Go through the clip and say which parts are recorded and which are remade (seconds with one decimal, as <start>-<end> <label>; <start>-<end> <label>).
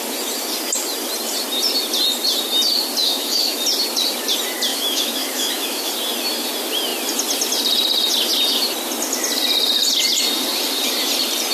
0.0-3.0 recorded; 3.0-3.6 remade; 3.6-4.7 recorded; 4.7-5.9 remade; 5.9-11.5 recorded